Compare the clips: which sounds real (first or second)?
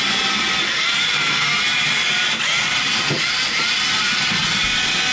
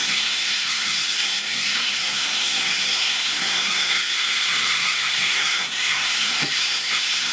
first